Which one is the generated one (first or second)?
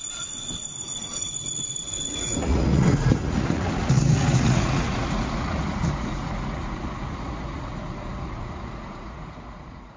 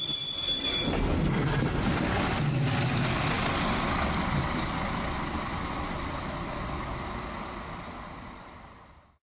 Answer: first